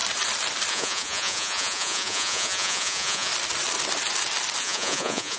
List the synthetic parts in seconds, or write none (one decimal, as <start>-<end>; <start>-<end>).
0.7-3.3; 4.6-5.4